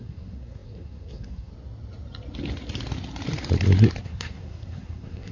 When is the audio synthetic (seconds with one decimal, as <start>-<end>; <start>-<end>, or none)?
0.0-1.5; 4.0-5.3